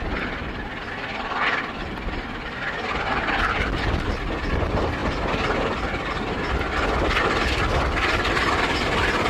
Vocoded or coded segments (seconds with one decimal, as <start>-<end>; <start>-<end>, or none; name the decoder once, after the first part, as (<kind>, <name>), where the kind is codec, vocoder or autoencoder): none